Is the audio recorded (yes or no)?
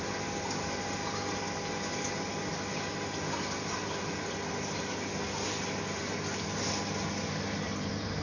yes